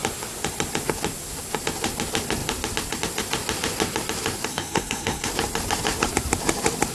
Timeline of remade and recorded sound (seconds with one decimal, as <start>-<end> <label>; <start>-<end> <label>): 0.0-4.5 recorded; 4.5-5.3 remade; 5.3-6.9 recorded

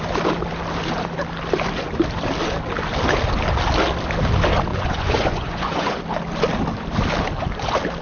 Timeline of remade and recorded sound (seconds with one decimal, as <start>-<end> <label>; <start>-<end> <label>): 0.0-4.7 recorded; 4.7-6.0 remade; 6.0-8.0 recorded